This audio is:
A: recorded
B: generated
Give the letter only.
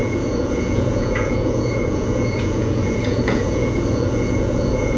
B